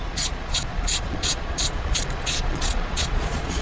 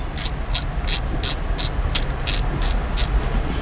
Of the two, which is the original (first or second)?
second